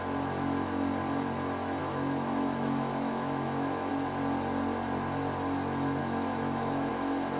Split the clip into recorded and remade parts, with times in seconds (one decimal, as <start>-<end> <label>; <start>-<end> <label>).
0.0-1.8 recorded; 1.8-3.9 remade; 3.9-6.0 recorded; 6.0-6.9 remade; 6.9-7.4 recorded